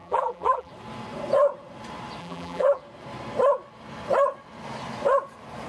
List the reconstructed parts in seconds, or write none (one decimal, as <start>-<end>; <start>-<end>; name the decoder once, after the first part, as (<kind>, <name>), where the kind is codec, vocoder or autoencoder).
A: 0.0-0.7 (vocoder, BigVGAN v2); 2.2-2.8

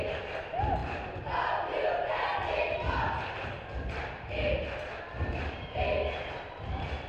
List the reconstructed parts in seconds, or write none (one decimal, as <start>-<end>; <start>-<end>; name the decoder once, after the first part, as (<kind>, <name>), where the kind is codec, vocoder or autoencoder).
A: none

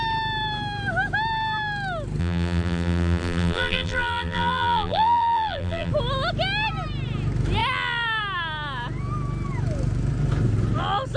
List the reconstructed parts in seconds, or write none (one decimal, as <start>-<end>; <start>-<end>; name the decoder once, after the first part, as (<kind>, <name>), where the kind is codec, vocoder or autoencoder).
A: 2.2-5.9 (vocoder, BigVGAN v2)

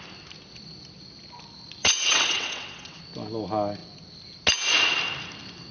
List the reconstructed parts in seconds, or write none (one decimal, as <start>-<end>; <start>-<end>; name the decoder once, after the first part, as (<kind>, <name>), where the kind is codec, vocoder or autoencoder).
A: 1.8-3.0 (vocoder, WaveNeXt)

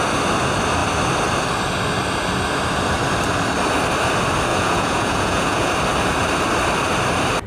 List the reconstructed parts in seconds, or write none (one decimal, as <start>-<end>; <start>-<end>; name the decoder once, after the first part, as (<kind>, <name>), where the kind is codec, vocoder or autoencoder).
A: 4.5-5.7 (vocoder, Vocos)

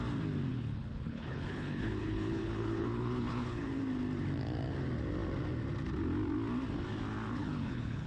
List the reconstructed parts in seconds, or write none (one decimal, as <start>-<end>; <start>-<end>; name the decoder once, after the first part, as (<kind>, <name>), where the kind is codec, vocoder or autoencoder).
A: 0.5-3.8 (codec, HILCodec); 7.4-8.1